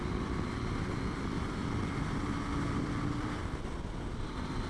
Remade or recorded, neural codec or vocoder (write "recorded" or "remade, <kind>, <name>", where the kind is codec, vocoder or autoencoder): remade, vocoder, BigVGAN v2